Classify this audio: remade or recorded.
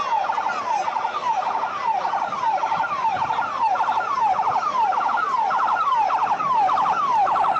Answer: recorded